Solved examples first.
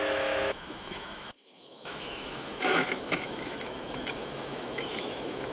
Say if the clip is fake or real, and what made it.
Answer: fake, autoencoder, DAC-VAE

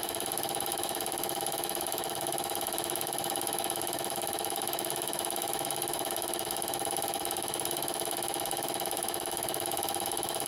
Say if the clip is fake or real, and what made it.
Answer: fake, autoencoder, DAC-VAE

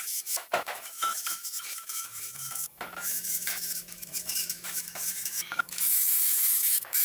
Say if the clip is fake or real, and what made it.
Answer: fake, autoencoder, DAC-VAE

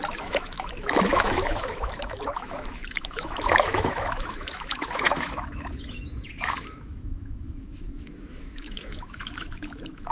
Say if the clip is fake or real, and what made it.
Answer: fake, autoencoder, DAC-VAE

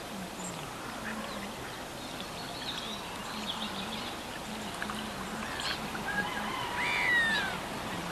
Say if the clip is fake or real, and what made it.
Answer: real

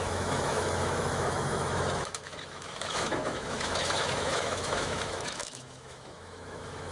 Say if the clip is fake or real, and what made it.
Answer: fake, autoencoder, DAC-VAE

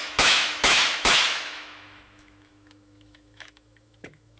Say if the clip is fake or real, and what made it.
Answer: fake, autoencoder, DAC-VAE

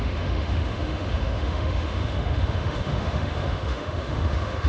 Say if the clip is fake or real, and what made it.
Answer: fake, autoencoder, DAC-VAE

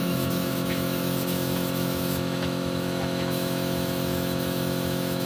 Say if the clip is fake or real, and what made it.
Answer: fake, autoencoder, DAC-VAE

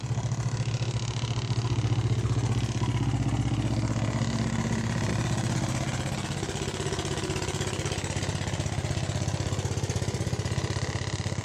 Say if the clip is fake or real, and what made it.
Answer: real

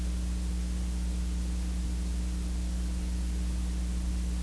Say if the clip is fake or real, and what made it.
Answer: real